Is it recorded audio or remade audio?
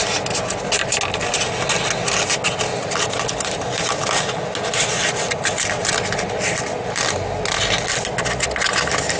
recorded